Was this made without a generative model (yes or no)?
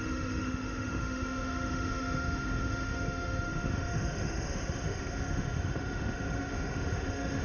no